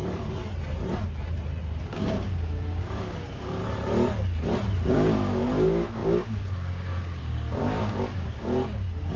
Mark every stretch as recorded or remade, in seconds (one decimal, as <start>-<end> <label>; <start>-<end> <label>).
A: 0.0-1.8 recorded; 1.8-3.6 remade; 3.6-4.9 recorded; 4.9-9.2 remade